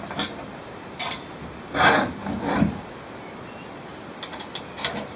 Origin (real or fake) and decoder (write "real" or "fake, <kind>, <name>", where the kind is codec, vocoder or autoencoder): real